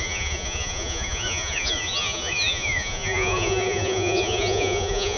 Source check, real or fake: fake